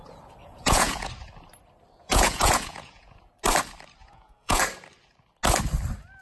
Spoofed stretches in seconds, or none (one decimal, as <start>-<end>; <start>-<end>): 0.4-1.1; 2.0-3.3; 4.0-4.6